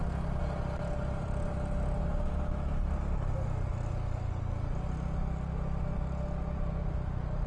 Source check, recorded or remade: recorded